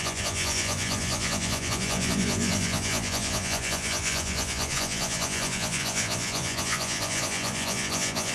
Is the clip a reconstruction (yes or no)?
yes